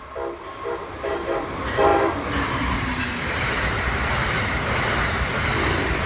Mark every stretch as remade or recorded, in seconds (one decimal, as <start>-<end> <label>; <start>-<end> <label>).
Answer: 0.0-6.1 recorded